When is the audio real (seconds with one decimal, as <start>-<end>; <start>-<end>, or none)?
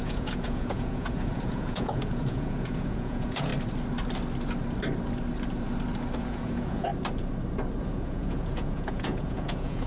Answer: 3.5-6.2; 6.9-7.8